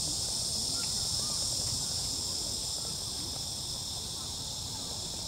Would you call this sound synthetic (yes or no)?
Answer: no